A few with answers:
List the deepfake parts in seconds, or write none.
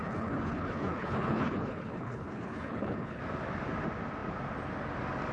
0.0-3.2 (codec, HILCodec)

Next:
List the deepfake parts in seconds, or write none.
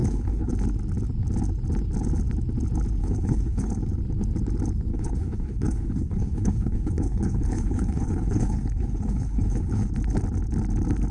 0.0-0.5 (codec, HILCodec); 3.0-3.7; 4.9-9.9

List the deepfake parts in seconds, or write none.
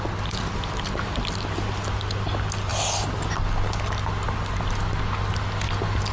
none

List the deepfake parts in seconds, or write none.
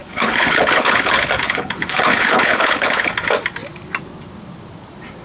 0.0-3.1 (codec, HILCodec)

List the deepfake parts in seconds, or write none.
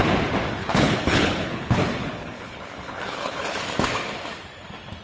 0.6-3.6 (codec, HILCodec)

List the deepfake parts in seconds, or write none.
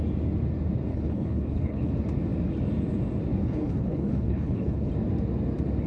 0.9-1.9 (codec, HILCodec); 3.4-4.9